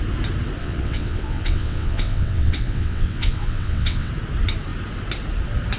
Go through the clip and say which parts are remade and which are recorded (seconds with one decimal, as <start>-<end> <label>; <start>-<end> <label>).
0.0-0.6 recorded; 0.6-4.1 remade; 4.1-5.8 recorded